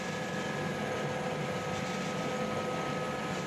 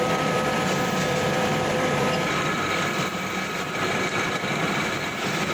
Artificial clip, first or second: second